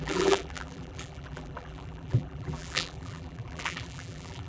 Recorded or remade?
remade